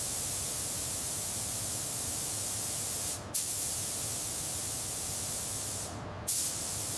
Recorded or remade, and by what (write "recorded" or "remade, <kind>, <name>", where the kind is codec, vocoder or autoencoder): recorded